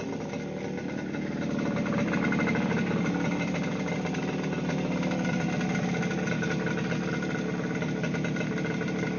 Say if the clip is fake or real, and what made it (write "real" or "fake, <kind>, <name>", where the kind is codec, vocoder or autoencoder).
real